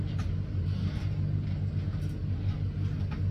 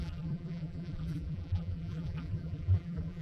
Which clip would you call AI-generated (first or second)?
second